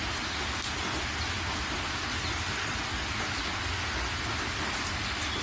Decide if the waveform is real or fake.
real